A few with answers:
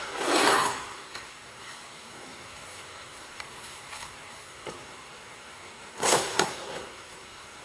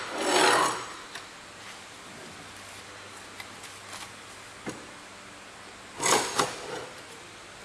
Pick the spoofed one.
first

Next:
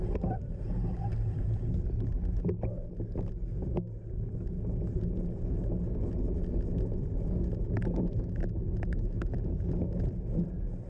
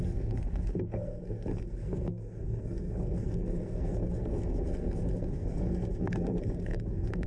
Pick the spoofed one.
second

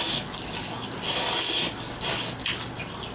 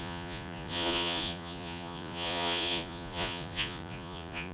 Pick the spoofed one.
second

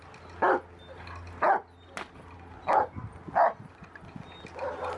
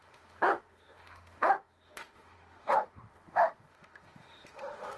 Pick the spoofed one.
second